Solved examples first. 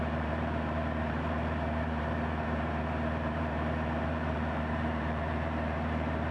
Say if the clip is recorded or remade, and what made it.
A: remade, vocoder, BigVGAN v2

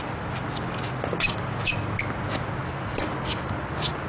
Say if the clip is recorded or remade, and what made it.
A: recorded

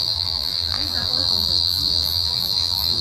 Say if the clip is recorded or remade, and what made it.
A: remade, vocoder, BigVGAN v2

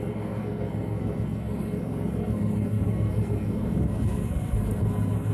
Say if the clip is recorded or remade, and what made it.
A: remade, codec, SNAC